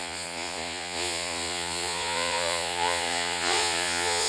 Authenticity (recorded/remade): remade